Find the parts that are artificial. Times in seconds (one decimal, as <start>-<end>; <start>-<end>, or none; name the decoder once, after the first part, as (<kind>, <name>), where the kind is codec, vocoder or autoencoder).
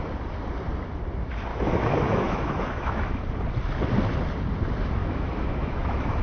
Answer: 1.5-3.2 (autoencoder, DAC-VAE); 5.0-6.2